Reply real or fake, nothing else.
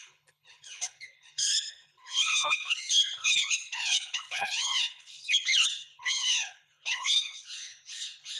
fake